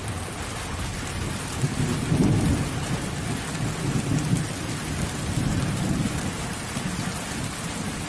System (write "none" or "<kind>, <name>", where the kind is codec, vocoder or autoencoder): none